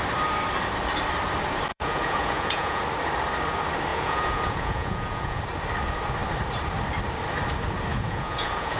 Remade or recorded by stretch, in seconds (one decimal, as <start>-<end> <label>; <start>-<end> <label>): 0.0-1.7 recorded; 1.7-2.8 remade; 2.8-3.9 recorded; 3.9-5.4 remade; 5.4-7.9 recorded; 7.9-8.8 remade